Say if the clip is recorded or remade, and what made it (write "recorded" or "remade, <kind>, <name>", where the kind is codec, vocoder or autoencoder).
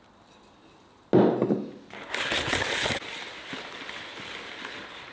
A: recorded